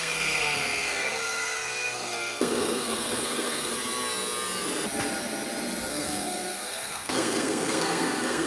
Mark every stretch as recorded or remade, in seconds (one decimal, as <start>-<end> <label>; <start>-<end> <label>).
0.0-3.7 remade; 3.7-5.9 recorded; 5.9-8.5 remade